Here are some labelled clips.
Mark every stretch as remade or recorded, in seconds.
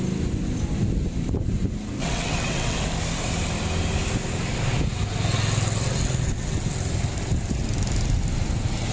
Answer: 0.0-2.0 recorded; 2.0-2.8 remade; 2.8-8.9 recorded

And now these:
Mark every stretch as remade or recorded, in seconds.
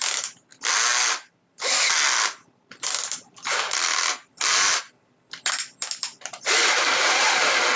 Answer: 0.0-7.8 recorded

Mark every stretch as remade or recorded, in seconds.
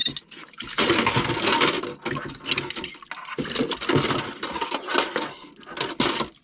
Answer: 0.0-6.4 recorded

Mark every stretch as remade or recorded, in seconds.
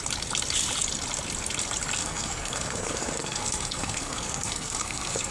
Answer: 0.0-2.0 recorded; 2.0-5.3 remade